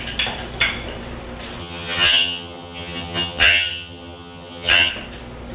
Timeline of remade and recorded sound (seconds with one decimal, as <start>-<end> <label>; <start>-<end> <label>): 0.0-1.6 recorded; 1.6-4.9 remade; 4.9-5.5 recorded